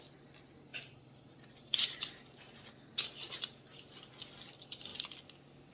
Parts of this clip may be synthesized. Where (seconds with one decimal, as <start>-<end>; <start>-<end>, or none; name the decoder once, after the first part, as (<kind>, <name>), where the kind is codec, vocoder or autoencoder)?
0.7-4.1 (vocoder, BigVGAN v2)